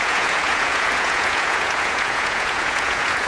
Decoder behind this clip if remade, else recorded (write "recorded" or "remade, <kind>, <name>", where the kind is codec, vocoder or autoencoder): remade, vocoder, Vocos